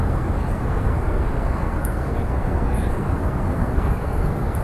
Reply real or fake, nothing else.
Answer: fake